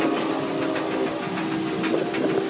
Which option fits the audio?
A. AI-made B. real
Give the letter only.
B